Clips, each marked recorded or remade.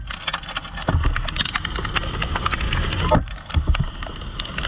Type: recorded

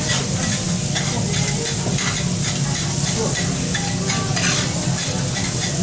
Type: recorded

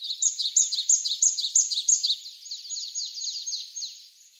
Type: recorded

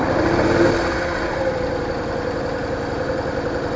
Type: recorded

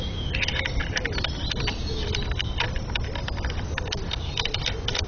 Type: recorded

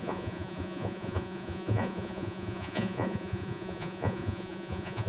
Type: remade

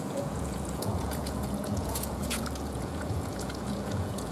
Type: remade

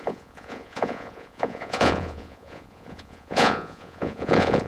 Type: remade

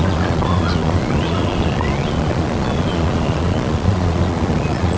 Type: remade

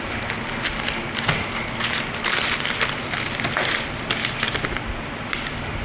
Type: recorded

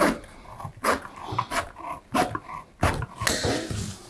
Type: recorded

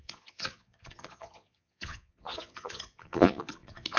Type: remade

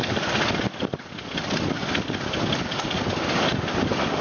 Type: recorded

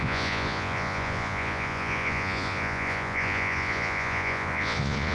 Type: remade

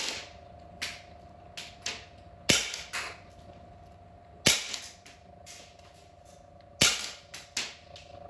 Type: recorded